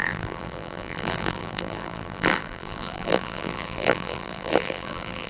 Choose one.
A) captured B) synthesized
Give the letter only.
B